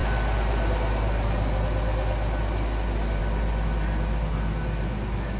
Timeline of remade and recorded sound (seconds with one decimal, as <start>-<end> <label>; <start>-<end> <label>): 0.0-5.4 recorded